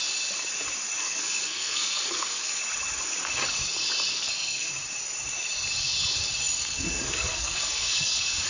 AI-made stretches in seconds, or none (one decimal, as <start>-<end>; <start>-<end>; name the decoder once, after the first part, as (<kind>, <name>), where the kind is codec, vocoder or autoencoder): 1.0-2.6 (codec, SNAC); 4.1-4.7; 6.6-8.5